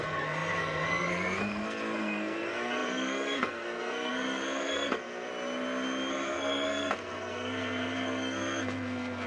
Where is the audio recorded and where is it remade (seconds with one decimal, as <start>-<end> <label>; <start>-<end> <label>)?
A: 0.0-5.3 remade; 5.3-6.1 recorded; 6.1-9.3 remade